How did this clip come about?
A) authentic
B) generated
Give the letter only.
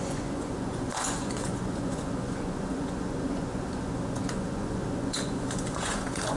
B